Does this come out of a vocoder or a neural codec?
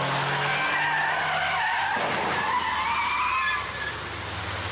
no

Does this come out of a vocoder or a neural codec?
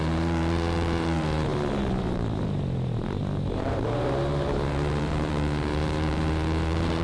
yes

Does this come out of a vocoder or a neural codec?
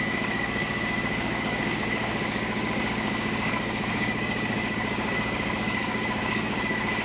yes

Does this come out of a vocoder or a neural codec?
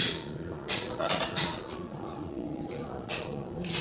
yes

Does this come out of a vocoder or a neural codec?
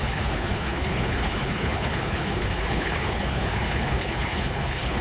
yes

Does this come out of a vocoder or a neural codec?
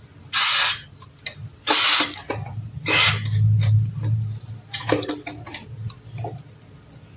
no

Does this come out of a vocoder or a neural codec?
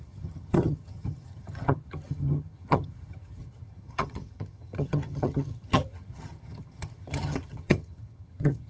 yes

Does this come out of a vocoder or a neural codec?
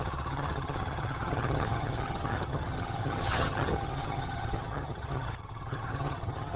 yes